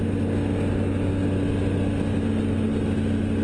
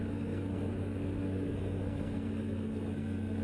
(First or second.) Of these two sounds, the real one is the first